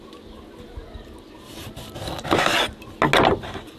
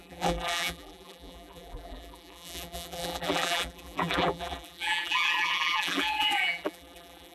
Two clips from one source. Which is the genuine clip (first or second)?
first